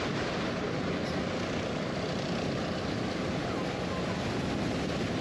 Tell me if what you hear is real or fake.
real